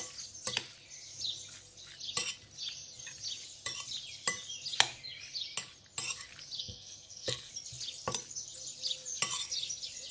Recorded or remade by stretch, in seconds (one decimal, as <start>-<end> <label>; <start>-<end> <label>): 0.0-6.6 recorded; 6.6-7.5 remade; 7.5-10.1 recorded